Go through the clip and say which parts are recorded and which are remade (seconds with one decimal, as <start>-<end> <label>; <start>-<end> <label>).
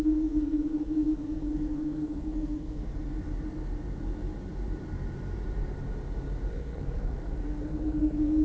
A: 0.0-2.9 remade; 2.9-6.5 recorded; 6.5-8.4 remade